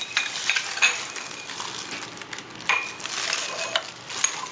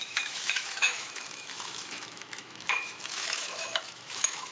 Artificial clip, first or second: second